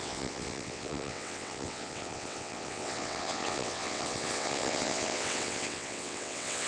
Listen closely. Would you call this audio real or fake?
fake